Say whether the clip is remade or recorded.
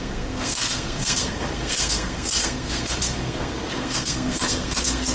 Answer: remade